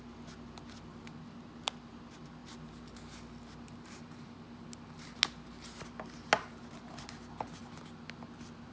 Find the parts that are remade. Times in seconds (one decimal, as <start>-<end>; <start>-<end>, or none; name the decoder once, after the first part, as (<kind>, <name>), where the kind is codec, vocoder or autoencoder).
none